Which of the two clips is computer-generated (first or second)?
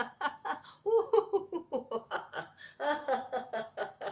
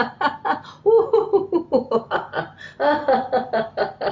first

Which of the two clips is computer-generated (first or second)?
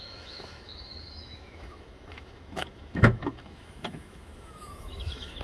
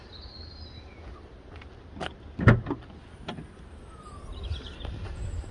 first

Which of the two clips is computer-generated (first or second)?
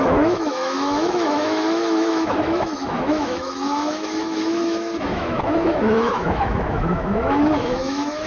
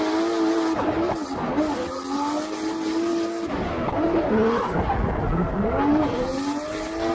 first